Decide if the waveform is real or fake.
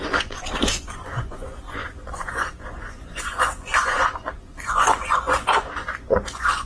fake